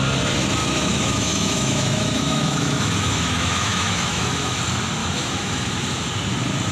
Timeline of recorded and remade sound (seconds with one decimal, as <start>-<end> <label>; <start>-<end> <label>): 0.0-0.6 recorded; 0.6-4.6 remade; 4.6-5.0 recorded; 5.0-5.7 remade; 5.7-6.7 recorded